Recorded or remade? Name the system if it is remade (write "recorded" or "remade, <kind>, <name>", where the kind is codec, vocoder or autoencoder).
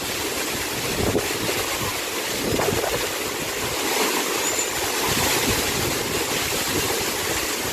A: recorded